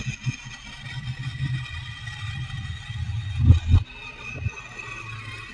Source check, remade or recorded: recorded